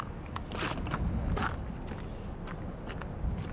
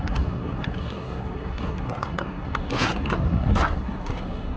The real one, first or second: first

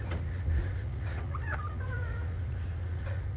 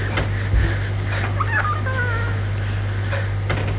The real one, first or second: second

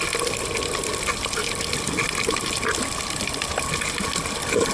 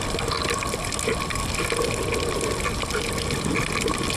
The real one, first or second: second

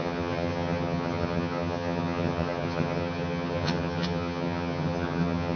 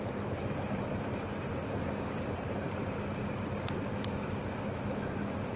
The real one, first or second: second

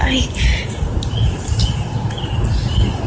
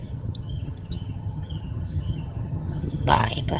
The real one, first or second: first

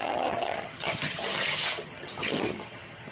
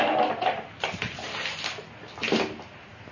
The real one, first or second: second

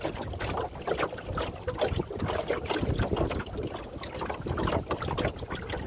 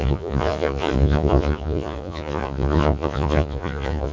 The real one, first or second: first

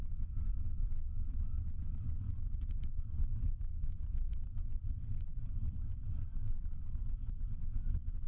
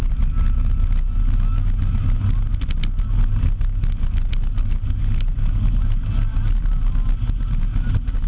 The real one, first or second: second